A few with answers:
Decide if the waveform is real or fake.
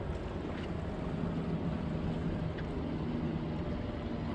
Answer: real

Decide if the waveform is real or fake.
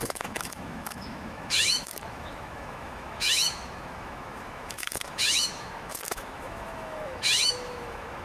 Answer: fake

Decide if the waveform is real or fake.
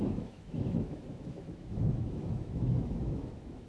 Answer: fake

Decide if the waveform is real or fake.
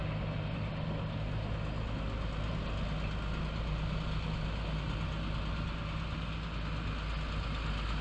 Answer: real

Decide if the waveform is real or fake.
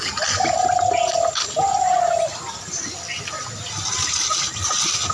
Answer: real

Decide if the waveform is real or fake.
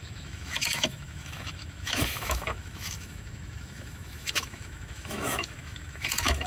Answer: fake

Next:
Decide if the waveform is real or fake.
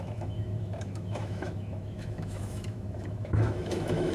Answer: fake